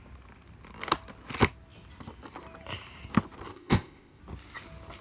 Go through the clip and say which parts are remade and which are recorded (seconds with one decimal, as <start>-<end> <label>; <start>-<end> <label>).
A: 0.0-3.5 recorded; 3.5-4.2 remade; 4.2-5.0 recorded